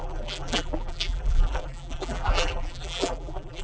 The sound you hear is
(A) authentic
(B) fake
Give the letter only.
B